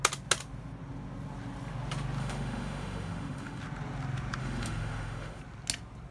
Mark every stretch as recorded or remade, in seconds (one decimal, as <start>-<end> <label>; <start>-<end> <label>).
0.0-2.2 recorded; 2.2-3.6 remade; 3.6-4.4 recorded; 4.4-5.4 remade; 5.4-6.1 recorded